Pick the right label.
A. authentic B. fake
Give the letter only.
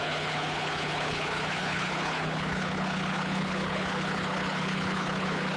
B